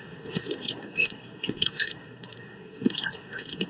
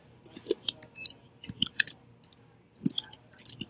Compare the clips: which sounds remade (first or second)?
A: first